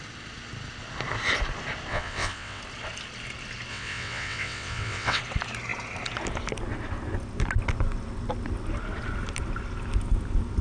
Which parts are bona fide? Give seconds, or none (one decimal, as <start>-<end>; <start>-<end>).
0.0-1.9; 2.6-3.7; 5.2-10.6